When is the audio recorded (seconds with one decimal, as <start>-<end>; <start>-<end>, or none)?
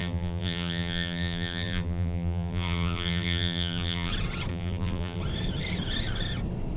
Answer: 4.1-4.5; 5.2-6.8